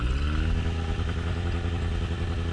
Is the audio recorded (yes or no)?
yes